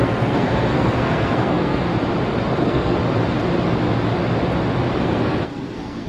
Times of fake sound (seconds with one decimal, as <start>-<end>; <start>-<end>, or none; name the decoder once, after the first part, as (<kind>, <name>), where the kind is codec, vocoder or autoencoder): 0.0-1.9 (codec, SNAC); 2.6-3.0; 5.0-6.1